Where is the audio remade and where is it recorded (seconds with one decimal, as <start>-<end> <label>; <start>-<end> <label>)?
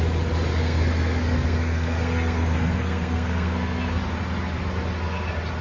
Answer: 0.0-0.6 recorded; 0.6-4.0 remade; 4.0-5.6 recorded